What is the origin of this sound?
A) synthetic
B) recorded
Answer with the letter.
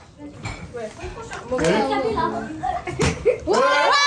B